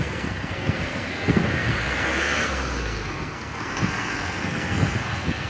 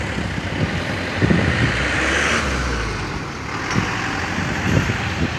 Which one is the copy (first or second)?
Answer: first